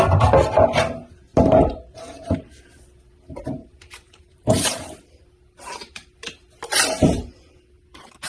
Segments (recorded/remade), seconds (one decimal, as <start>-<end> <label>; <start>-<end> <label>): 0.0-1.3 recorded; 1.3-2.5 remade; 2.5-3.6 recorded; 3.6-4.8 remade; 4.8-8.3 recorded